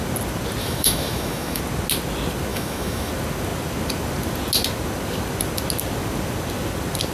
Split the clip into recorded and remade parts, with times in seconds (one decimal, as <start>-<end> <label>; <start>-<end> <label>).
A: 0.0-0.6 recorded; 0.6-1.6 remade; 1.6-2.5 recorded; 2.5-3.1 remade; 3.1-7.1 recorded